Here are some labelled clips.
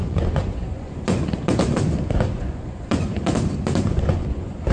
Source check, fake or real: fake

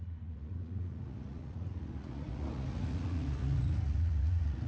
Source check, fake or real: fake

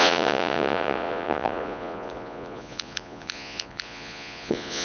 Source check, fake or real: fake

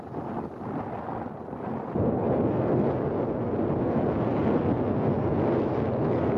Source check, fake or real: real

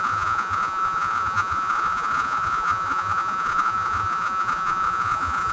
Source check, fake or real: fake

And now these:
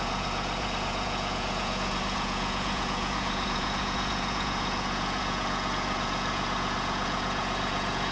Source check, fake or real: fake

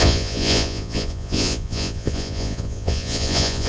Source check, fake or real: fake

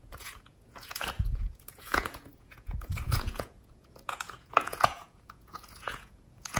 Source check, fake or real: fake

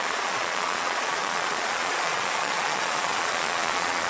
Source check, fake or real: fake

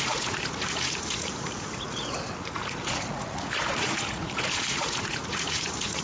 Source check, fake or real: fake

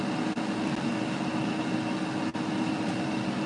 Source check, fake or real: real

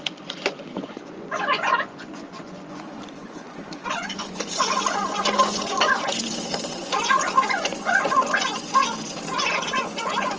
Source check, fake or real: fake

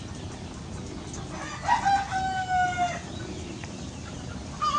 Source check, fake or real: real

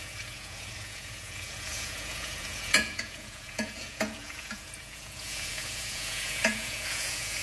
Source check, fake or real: fake